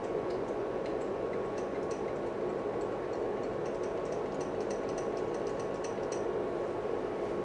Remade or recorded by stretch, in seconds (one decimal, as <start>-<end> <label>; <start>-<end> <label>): 0.0-1.8 remade; 1.8-7.4 recorded